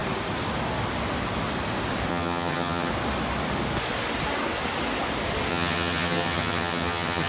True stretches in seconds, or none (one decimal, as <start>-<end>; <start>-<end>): 0.0-2.1; 2.9-5.5